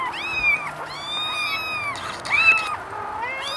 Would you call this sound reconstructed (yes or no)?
no